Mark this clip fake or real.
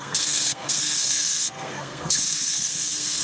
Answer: fake